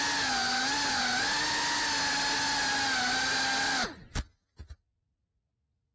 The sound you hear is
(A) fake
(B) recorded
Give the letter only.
B